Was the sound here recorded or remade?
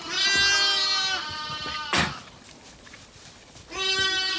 recorded